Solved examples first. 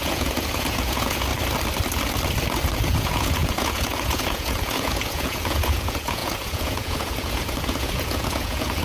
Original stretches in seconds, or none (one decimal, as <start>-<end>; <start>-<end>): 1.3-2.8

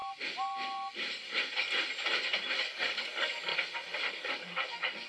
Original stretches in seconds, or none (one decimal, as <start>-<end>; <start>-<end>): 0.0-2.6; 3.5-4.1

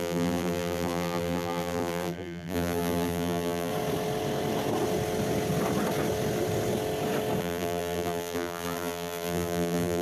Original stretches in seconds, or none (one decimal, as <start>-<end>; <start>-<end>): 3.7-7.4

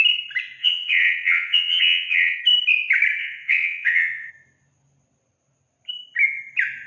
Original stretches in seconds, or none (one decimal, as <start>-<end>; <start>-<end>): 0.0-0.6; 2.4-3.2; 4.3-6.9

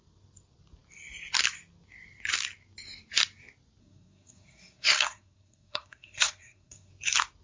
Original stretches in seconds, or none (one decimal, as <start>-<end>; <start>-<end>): 0.0-3.8; 6.9-7.4

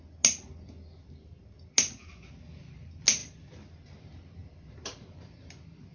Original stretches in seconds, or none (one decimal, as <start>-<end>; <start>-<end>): 0.0-4.4; 5.3-5.9

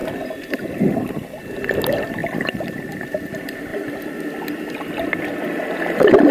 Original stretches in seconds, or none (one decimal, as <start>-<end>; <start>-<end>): 1.4-3.7; 5.6-6.3